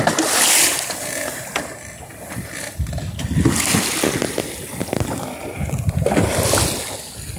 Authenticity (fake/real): real